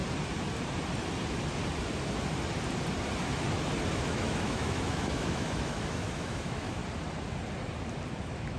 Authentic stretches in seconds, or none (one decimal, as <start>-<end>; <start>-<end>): 0.0-3.9; 6.8-8.2